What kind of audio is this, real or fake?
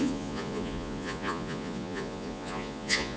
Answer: fake